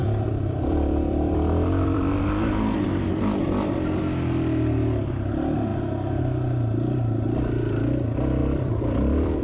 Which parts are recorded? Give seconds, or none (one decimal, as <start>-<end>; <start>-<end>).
4.0-8.4